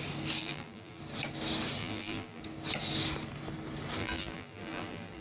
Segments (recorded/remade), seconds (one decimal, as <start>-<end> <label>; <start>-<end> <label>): 0.0-0.4 recorded; 0.4-1.0 remade; 1.0-1.8 recorded; 1.8-2.4 remade; 2.4-4.0 recorded; 4.0-5.2 remade